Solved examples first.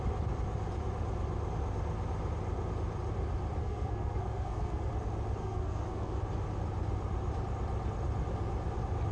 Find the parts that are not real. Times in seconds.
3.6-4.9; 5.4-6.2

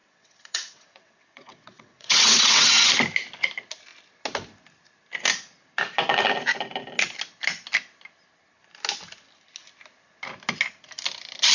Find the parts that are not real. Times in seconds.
0.0-2.9